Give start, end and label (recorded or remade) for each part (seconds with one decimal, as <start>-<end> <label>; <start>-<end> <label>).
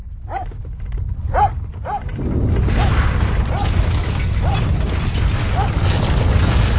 0.0-6.8 recorded